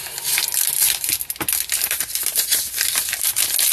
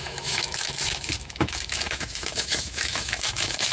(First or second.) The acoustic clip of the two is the first